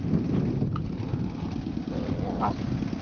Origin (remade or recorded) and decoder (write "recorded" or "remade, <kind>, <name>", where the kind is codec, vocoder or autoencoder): recorded